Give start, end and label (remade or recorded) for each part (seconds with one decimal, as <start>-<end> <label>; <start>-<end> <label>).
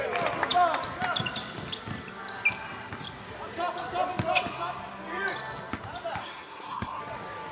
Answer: 0.0-6.2 recorded; 6.2-7.0 remade; 7.0-7.5 recorded